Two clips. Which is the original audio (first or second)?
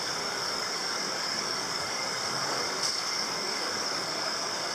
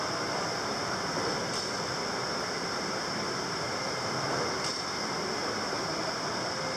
second